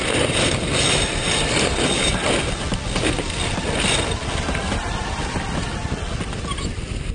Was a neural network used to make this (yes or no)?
no